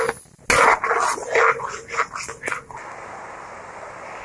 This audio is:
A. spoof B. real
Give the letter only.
B